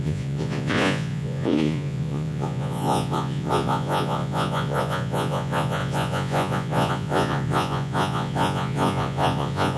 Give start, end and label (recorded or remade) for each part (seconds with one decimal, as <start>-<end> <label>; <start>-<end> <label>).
0.0-9.8 remade